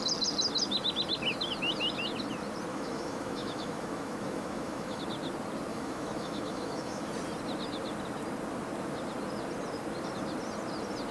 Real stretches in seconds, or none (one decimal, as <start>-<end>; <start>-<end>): 0.0-2.7; 5.0-5.7; 7.1-11.1